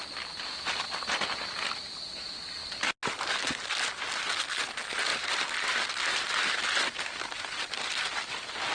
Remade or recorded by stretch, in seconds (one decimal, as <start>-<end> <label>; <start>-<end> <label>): 0.0-8.7 recorded